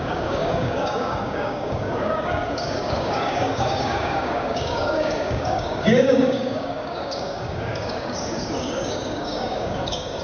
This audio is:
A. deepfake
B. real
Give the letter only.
A